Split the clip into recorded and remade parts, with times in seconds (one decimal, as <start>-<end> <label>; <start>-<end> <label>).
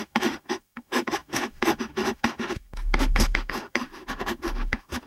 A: 0.0-5.1 remade